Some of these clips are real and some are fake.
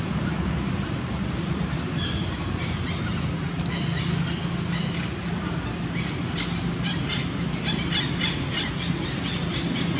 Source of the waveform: real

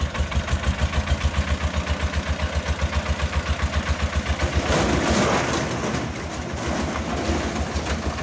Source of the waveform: real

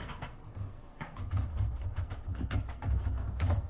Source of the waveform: fake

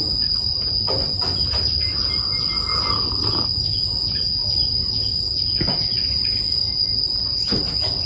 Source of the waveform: real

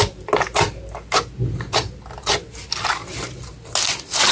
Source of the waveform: real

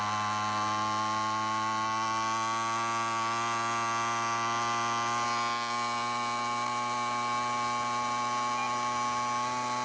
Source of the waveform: real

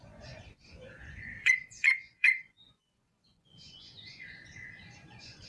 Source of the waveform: fake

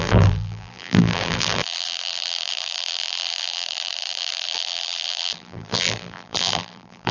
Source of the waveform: fake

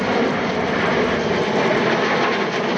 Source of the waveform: real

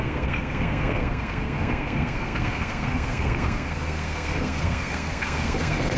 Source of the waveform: fake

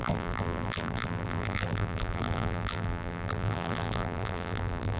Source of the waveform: fake